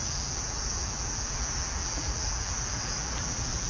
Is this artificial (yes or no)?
yes